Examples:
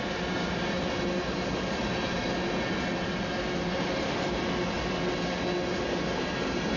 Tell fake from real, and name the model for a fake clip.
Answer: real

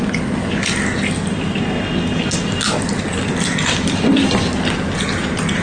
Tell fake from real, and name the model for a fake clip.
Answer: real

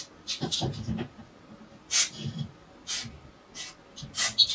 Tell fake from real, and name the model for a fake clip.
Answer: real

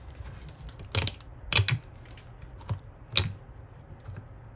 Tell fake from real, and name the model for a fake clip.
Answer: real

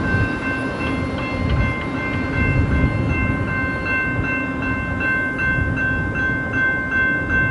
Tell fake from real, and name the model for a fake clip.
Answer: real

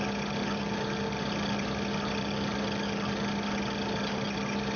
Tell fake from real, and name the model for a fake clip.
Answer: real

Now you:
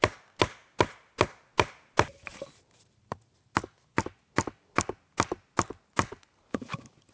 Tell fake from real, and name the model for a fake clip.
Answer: real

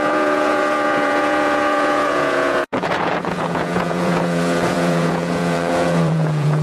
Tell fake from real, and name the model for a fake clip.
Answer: fake, vocoder, Vocos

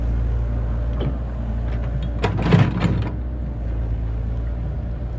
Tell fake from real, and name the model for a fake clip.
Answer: real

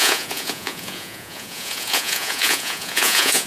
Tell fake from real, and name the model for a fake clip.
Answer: fake, vocoder, Vocos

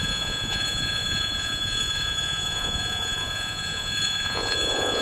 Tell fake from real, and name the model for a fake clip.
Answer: fake, vocoder, Vocos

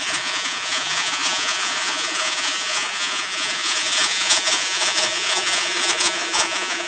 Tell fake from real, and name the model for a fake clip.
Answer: fake, vocoder, Vocos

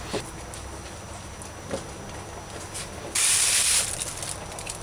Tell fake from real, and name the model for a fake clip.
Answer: real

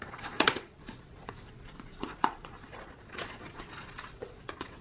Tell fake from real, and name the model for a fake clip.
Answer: fake, vocoder, Vocos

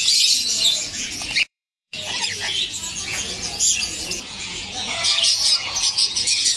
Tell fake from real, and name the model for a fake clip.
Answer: fake, vocoder, Vocos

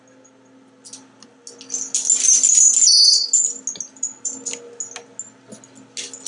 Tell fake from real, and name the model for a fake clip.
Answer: real